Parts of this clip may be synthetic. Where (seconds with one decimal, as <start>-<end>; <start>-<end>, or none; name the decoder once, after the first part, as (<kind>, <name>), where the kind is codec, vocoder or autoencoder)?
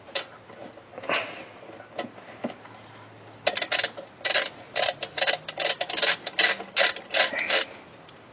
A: none